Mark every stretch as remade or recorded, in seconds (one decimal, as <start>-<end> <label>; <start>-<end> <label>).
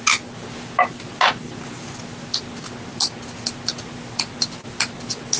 0.0-5.4 recorded